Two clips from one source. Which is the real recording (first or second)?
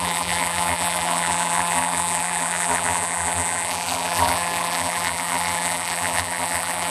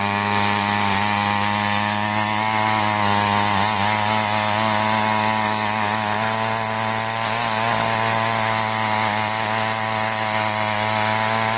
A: second